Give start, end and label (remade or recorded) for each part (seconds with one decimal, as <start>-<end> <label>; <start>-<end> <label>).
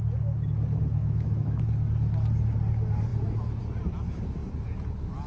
0.0-1.0 recorded; 1.0-1.6 remade; 1.6-5.3 recorded